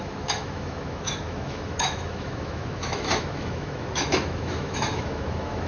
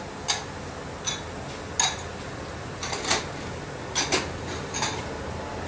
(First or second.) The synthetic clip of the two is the first